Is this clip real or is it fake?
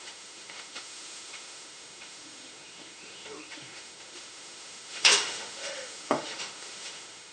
fake